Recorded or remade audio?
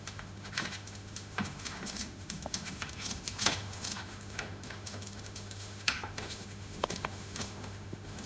remade